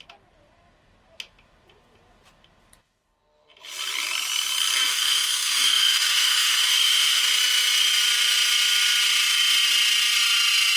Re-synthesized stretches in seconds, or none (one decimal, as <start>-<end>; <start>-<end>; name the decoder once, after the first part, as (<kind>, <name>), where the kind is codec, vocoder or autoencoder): 4.9-7.2 (autoencoder, DAC-VAE)

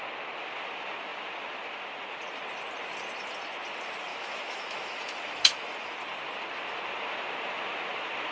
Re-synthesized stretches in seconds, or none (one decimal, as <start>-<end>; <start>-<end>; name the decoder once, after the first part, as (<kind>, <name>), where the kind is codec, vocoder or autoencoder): 4.1-5.9 (autoencoder, DAC-VAE)